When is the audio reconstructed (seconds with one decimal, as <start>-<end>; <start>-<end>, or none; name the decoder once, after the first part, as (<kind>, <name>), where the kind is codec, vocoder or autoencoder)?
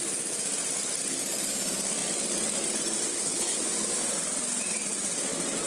3.1-3.6 (codec, HILCodec)